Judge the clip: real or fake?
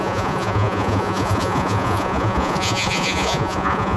fake